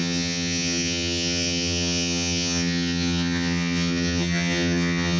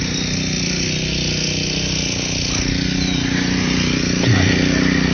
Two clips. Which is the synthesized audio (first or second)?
first